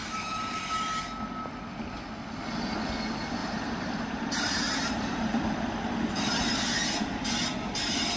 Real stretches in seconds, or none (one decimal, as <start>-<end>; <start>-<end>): 0.6-3.4; 5.4-8.2